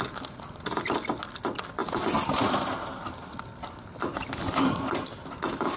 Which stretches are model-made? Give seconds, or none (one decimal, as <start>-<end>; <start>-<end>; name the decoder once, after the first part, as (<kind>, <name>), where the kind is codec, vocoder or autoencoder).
none